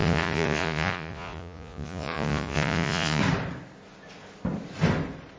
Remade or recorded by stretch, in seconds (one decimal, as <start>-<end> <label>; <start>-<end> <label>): 0.0-3.2 remade; 3.2-5.4 recorded